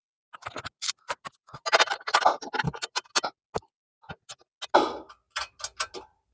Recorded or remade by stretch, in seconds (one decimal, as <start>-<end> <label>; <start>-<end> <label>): 0.0-6.3 recorded

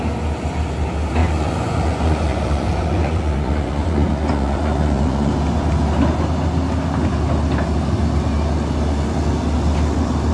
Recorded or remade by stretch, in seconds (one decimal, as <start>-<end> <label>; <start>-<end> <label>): 0.0-1.2 recorded; 1.2-5.3 remade; 5.3-10.3 recorded

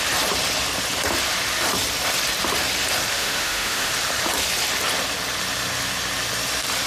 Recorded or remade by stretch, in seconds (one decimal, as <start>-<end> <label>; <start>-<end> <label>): 0.0-3.1 recorded; 3.1-3.9 remade; 3.9-6.9 recorded